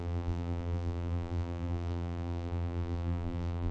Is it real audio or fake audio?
fake